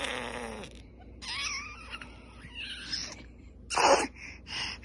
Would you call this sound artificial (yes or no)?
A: no